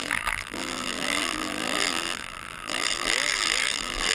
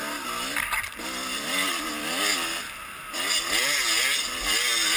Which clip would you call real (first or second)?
second